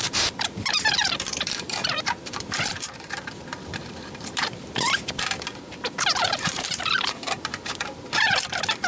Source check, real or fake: fake